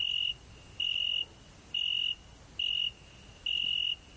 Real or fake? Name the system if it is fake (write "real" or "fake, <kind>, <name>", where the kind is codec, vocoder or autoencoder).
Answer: real